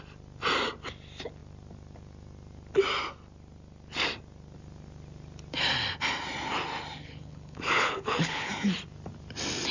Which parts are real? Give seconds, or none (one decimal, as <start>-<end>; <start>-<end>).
0.0-7.0; 8.5-9.7